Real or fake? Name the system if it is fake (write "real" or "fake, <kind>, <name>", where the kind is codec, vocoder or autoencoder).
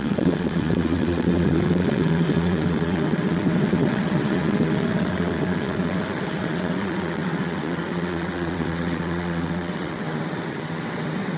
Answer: fake, vocoder, WaveNeXt